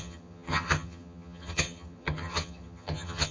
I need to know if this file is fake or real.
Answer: fake